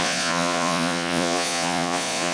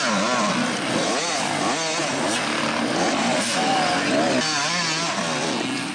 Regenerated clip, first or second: first